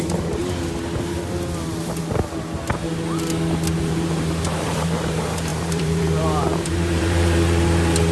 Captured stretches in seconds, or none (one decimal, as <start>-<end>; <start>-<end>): 0.4-3.8